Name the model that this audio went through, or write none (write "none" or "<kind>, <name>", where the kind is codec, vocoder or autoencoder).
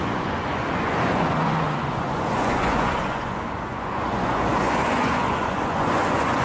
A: vocoder, Vocos